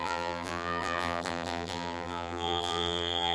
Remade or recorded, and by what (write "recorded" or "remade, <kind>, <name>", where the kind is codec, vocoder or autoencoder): remade, vocoder, BigVGAN v2